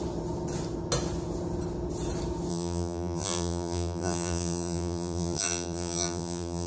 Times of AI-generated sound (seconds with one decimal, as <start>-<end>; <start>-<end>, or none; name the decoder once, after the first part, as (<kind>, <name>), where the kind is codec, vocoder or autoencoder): 2.5-6.7 (vocoder, BigVGAN v2)

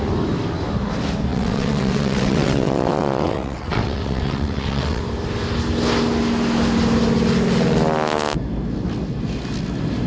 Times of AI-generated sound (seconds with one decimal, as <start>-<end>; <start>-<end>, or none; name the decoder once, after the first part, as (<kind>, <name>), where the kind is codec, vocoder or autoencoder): 1.3-5.0 (vocoder, WaveNeXt)

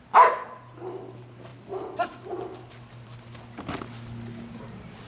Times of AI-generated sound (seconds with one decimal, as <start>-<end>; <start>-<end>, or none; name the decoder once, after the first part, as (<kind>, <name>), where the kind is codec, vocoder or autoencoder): none

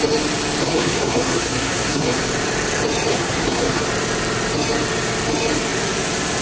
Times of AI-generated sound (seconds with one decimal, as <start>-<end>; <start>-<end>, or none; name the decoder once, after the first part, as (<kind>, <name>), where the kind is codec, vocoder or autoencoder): 0.6-2.2 (codec, SNAC); 3.1-3.8

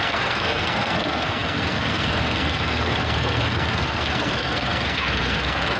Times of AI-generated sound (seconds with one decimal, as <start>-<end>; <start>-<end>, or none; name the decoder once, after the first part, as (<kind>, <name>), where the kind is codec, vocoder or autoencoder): 0.0-5.8 (codec, SNAC)